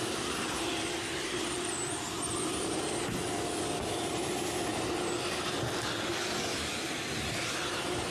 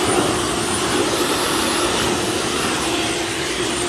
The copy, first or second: first